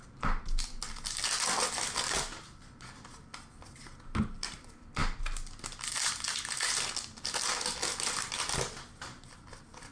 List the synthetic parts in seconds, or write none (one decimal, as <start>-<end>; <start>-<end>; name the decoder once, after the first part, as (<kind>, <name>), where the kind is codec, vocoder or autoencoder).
none